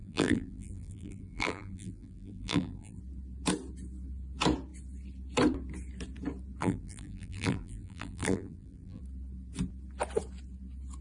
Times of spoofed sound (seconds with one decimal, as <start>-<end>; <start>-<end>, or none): 0.0-3.0; 6.6-9.0